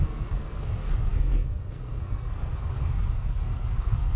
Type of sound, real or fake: fake